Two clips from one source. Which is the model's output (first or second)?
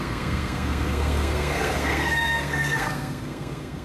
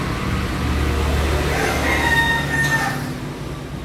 first